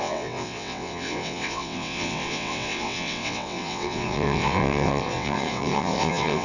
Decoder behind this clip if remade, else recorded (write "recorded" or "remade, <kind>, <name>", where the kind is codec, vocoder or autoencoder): remade, vocoder, WaveNeXt